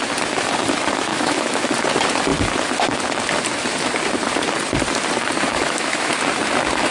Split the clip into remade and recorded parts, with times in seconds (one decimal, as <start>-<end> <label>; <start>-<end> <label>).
0.0-1.1 recorded; 1.1-1.7 remade; 1.7-5.5 recorded; 5.5-6.1 remade; 6.1-6.9 recorded